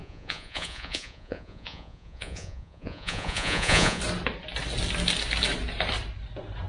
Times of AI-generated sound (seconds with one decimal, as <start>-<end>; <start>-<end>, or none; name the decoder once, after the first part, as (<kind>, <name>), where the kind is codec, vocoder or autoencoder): 0.0-4.0 (vocoder, Vocos)